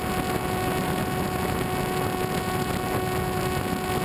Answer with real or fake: real